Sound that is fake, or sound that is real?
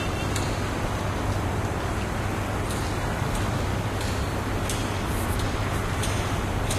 real